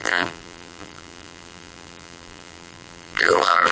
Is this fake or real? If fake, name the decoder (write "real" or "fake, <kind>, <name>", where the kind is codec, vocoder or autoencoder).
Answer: fake, vocoder, BigVGAN v2